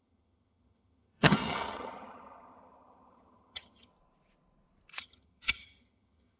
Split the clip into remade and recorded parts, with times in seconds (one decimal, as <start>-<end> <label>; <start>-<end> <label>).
0.0-3.9 remade; 3.9-5.0 recorded; 5.0-6.4 remade